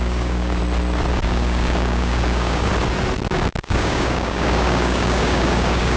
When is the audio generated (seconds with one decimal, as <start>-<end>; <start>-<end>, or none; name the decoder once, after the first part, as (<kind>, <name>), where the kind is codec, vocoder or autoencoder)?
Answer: 0.0-0.6 (codec, DAC); 1.1-2.7; 3.3-6.0